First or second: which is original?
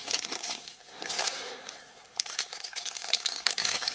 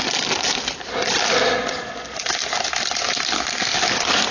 second